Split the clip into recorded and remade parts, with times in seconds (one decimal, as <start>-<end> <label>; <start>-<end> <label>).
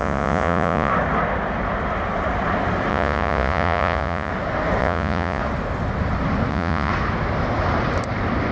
0.0-0.9 remade; 0.9-2.9 recorded; 2.9-4.3 remade; 4.3-4.8 recorded; 4.8-5.4 remade; 5.4-6.5 recorded; 6.5-6.9 remade; 6.9-8.5 recorded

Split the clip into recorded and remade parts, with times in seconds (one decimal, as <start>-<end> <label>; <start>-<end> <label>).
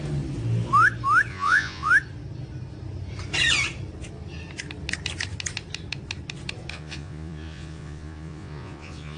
0.0-1.3 recorded; 1.3-1.9 remade; 1.9-6.7 recorded; 6.7-9.2 remade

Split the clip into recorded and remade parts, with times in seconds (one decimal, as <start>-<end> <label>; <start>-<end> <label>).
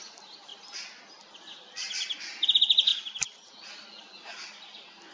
0.0-5.1 recorded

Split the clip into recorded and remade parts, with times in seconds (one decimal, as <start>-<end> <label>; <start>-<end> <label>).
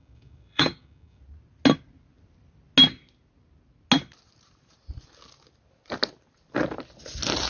0.0-1.2 remade; 1.2-7.5 recorded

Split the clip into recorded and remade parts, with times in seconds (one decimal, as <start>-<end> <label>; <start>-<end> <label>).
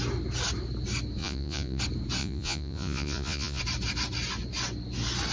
0.0-1.2 recorded; 1.2-1.8 remade; 1.8-2.2 recorded; 2.2-3.6 remade; 3.6-5.3 recorded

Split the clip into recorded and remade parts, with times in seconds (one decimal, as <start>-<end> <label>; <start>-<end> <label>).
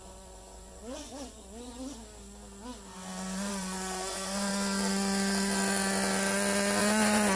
0.0-1.8 remade; 1.8-3.5 recorded; 3.5-4.5 remade; 4.5-6.8 recorded; 6.8-7.4 remade